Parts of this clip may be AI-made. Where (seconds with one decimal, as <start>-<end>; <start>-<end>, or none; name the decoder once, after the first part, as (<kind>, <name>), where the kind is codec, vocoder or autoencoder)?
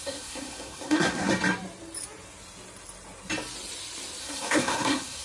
0.0-1.3 (codec, SNAC); 4.2-5.2